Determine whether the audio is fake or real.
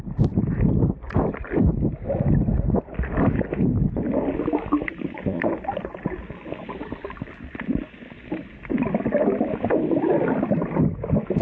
real